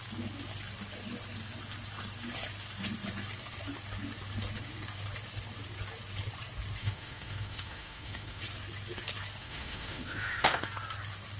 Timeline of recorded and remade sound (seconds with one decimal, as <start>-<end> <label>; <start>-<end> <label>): 0.0-6.8 recorded; 6.8-8.4 remade; 8.4-9.4 recorded; 9.4-10.6 remade; 10.6-11.4 recorded